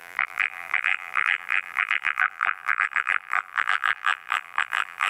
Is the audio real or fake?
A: fake